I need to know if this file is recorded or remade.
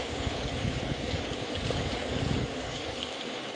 remade